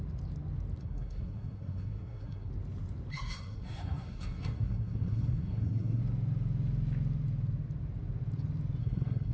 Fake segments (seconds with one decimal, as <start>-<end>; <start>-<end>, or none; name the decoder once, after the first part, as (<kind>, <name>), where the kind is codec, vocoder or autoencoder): 0.8-2.5 (codec, SNAC); 3.1-6.0; 8.8-9.3